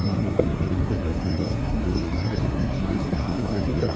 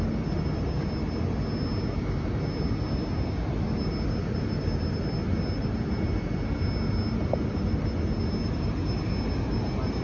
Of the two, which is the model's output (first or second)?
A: first